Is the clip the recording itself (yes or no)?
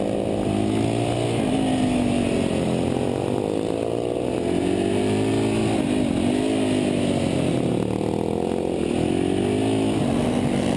yes